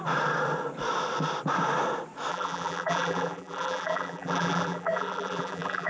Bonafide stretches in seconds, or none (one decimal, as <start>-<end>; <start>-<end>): 0.0-2.3